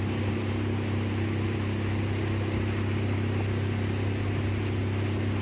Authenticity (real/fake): real